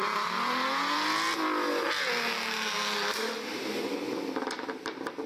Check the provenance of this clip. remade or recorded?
recorded